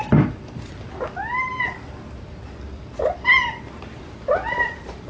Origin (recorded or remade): recorded